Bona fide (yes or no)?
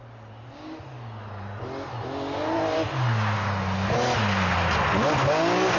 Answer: yes